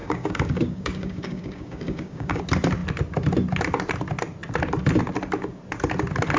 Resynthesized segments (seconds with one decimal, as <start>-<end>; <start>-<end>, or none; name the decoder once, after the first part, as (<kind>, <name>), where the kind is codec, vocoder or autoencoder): 0.0-2.4 (codec, DAC)